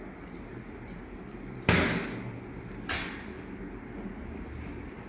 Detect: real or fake real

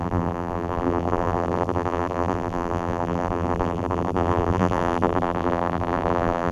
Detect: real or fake fake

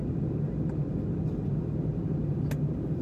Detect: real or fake real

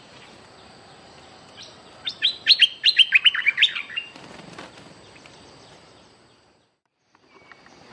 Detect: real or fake fake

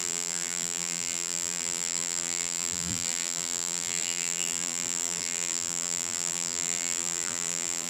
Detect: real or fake fake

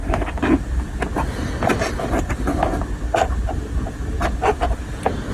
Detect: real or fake real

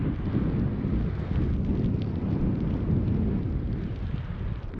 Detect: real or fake real